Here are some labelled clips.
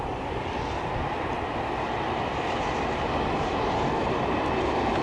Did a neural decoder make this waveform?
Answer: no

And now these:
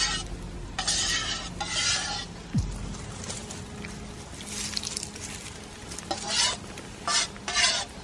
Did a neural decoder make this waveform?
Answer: no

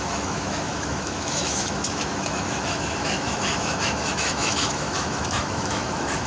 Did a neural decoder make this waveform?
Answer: yes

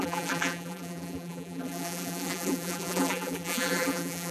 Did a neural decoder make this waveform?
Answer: yes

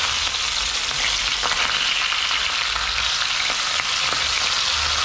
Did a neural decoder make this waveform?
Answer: no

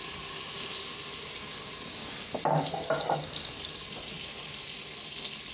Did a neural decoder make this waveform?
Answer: no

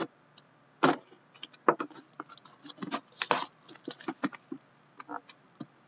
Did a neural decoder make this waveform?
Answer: no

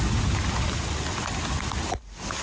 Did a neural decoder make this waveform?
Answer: no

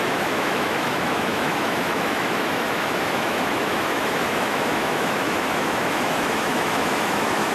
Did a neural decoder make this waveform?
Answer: yes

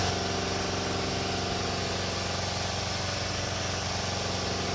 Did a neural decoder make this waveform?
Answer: no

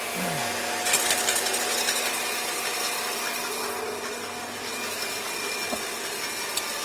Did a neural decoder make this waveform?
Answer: no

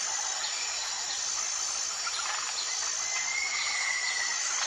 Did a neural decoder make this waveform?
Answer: no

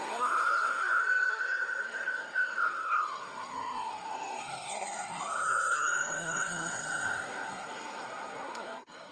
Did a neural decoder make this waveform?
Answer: yes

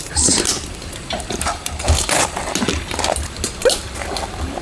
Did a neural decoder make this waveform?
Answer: no